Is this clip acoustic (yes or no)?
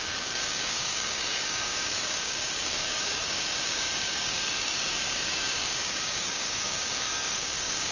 no